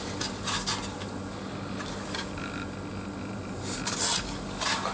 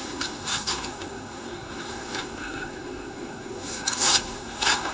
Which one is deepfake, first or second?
second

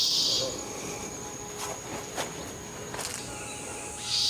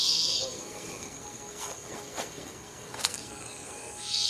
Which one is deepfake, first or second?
second